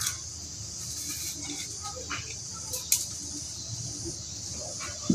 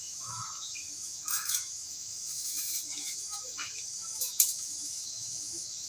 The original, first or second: first